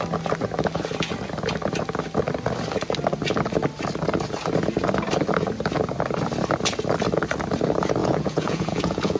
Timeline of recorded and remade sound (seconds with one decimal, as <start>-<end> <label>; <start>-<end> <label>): 0.0-8.0 recorded; 8.0-9.2 remade